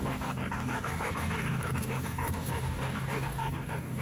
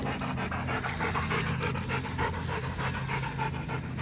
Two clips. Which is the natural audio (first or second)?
second